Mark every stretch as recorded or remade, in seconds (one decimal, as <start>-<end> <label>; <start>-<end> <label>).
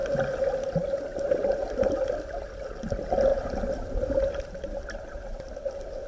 0.0-3.3 recorded; 3.3-5.5 remade; 5.5-6.1 recorded